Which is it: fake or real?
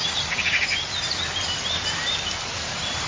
real